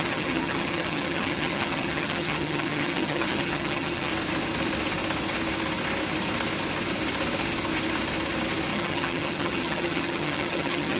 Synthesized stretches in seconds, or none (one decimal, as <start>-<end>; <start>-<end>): 0.0-4.1; 8.7-11.0